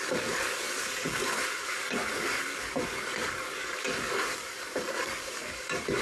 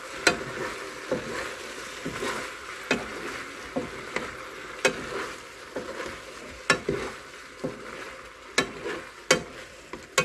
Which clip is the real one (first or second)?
second